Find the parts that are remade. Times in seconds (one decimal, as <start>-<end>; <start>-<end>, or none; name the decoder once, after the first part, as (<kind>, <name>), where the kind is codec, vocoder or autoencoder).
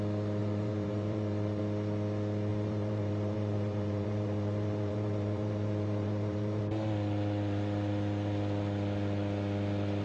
0.4-1.6 (vocoder, BigVGAN v2); 2.5-6.6